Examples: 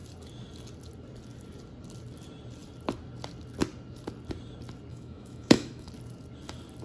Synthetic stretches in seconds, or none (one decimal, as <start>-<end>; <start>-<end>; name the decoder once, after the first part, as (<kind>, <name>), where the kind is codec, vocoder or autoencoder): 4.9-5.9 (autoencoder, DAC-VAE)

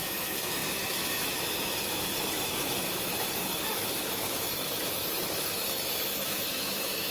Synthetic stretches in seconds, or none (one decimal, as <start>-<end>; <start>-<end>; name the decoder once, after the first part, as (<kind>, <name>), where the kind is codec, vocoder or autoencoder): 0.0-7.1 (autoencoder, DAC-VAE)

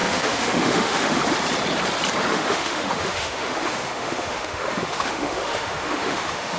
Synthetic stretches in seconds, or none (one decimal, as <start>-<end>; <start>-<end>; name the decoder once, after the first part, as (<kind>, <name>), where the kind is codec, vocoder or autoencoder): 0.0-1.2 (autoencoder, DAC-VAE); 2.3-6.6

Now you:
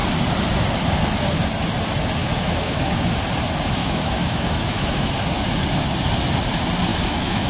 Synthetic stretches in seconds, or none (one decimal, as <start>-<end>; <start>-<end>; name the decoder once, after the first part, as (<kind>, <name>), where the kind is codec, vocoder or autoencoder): 2.2-3.1 (autoencoder, DAC-VAE); 3.8-5.1; 6.9-7.5

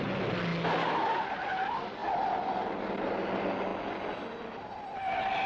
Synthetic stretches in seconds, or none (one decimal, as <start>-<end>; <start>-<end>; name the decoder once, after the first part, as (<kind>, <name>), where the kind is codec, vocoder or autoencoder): none

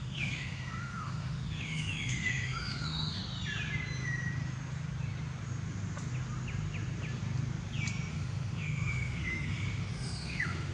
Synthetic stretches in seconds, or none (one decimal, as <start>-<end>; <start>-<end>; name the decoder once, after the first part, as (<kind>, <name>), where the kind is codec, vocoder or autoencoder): 0.0-3.2 (autoencoder, DAC-VAE); 8.1-10.7